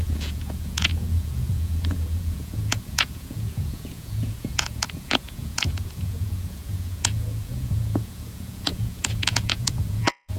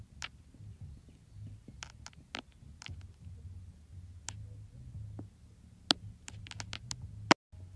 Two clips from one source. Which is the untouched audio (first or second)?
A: second